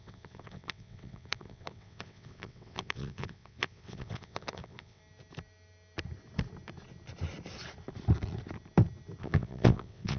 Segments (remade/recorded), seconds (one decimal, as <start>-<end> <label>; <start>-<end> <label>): 0.0-5.0 remade; 5.0-9.2 recorded; 9.2-10.2 remade